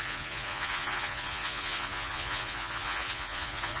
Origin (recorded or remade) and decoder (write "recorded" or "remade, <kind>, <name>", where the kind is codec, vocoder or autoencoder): remade, vocoder, Vocos